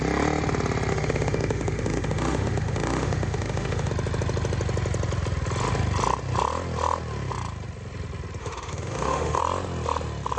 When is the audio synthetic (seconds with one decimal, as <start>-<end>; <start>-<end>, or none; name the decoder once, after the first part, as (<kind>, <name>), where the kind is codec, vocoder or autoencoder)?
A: 0.9-3.9 (autoencoder, DAC-VAE); 8.4-9.4

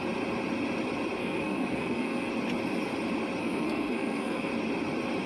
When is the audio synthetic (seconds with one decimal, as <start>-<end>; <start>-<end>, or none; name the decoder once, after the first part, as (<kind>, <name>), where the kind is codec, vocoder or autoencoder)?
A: 1.2-2.3 (codec, SNAC); 3.4-4.5

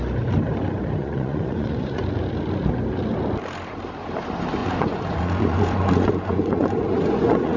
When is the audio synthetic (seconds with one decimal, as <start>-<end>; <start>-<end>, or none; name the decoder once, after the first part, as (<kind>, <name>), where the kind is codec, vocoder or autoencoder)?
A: 1.0-2.0 (vocoder, Vocos); 4.6-7.6

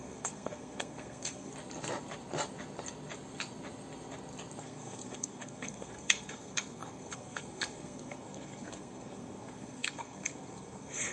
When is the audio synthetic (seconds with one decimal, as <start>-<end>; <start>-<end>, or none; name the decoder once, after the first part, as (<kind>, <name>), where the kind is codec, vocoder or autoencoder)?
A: 0.0-1.5 (codec, SNAC); 4.6-11.1

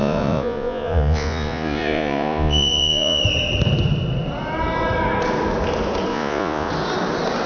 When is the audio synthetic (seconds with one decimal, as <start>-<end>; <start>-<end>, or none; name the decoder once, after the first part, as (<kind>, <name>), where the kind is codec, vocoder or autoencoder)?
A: 0.0-3.2 (vocoder, Vocos); 6.1-6.7